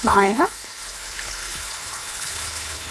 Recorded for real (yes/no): no